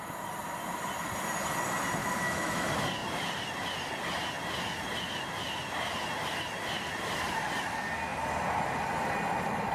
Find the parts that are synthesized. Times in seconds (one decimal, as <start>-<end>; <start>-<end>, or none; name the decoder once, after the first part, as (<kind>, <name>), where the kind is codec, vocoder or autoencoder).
2.0-2.6 (autoencoder, DAC-VAE)